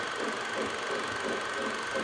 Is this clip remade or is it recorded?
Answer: recorded